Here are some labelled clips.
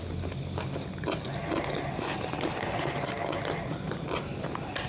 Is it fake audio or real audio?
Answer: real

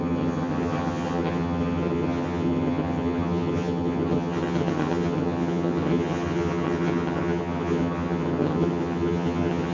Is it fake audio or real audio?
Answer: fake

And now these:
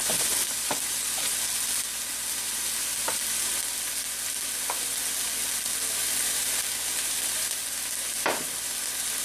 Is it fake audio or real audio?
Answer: real